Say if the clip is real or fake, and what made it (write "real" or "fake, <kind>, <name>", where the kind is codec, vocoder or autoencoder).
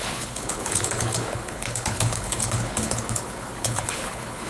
fake, codec, HILCodec